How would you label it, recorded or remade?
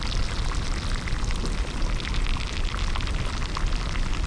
recorded